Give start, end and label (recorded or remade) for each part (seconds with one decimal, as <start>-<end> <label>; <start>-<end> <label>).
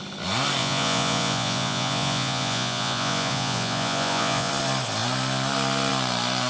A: 0.0-0.6 recorded; 0.6-4.5 remade; 4.5-6.5 recorded